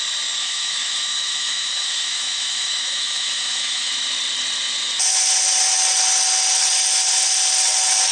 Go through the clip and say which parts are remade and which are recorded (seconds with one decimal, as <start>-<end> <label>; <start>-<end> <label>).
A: 0.0-0.4 recorded; 0.4-3.9 remade; 3.9-8.1 recorded